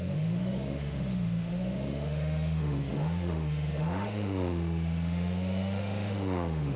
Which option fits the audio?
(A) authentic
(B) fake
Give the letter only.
B